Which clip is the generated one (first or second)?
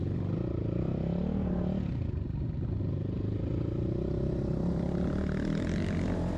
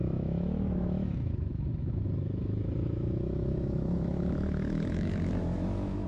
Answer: second